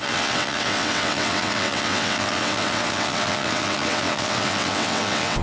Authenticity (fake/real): fake